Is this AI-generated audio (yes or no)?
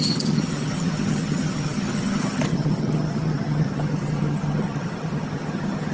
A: yes